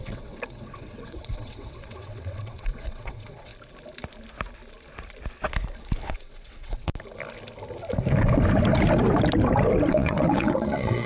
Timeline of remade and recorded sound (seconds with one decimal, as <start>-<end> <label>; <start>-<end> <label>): 0.0-3.5 remade; 3.5-6.1 recorded; 6.1-6.9 remade; 6.9-9.9 recorded; 9.9-11.1 remade